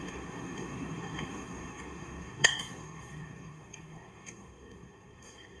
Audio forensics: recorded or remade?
remade